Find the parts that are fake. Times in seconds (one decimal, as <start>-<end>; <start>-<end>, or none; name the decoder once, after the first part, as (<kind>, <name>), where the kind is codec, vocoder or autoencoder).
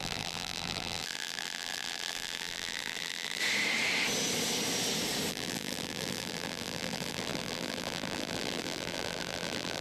0.0-3.4 (vocoder, BigVGAN v2); 5.3-9.8